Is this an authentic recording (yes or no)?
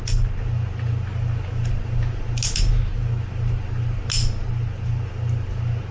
yes